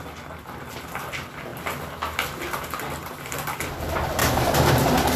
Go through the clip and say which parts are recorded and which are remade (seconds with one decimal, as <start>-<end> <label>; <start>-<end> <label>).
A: 0.0-4.2 recorded; 4.2-4.7 remade; 4.7-5.2 recorded